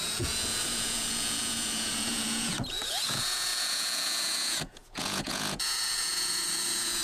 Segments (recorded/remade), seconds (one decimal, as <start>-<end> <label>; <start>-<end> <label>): 0.0-7.0 remade